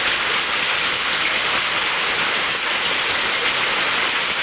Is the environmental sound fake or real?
real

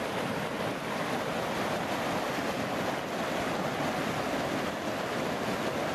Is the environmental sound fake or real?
real